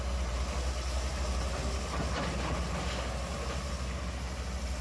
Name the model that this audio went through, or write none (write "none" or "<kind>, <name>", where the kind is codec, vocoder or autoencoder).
none